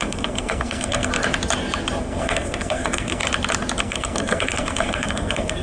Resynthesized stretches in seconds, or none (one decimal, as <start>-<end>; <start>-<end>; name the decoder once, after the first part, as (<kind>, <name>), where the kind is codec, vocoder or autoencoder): 0.0-1.1 (codec, SNAC); 2.0-3.2; 3.8-5.6